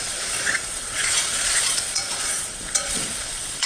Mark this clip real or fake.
fake